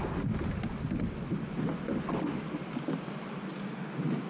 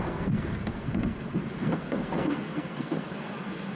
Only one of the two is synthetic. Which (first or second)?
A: second